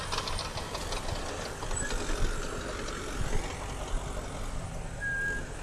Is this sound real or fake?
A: real